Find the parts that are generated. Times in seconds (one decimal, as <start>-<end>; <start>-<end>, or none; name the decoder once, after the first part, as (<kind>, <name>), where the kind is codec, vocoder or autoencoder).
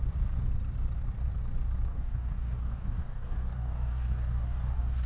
1.9-5.1 (codec, DAC)